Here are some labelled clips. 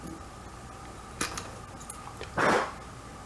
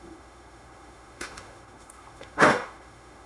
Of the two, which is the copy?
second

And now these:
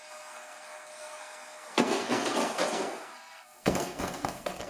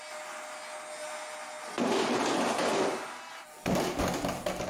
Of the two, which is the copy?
first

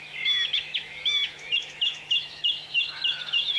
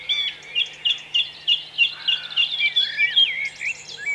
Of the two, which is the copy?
first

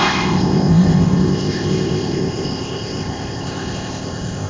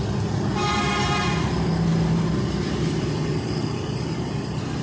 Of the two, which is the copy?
first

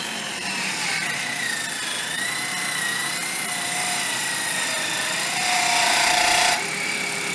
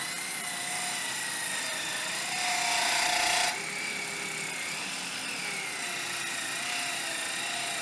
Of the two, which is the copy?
first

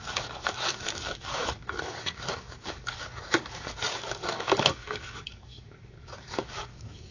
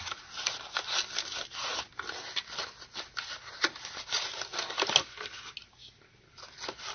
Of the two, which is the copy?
first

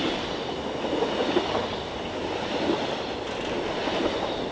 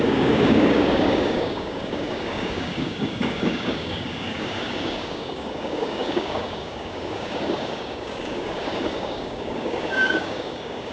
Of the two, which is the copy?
second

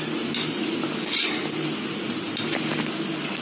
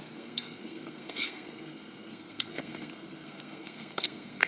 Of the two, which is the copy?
second